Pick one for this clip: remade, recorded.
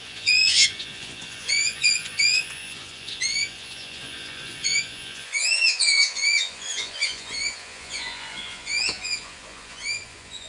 remade